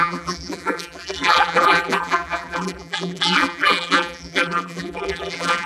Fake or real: fake